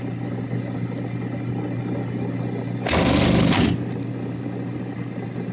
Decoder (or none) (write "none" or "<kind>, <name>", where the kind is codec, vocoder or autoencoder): none